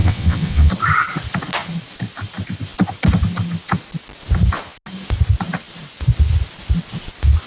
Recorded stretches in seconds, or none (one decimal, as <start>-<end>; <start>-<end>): 0.7-7.5